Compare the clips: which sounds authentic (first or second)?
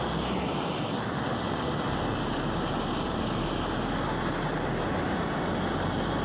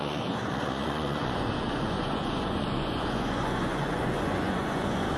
first